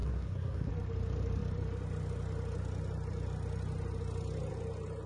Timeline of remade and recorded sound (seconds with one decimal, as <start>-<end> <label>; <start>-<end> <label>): 0.0-0.7 remade; 0.7-5.1 recorded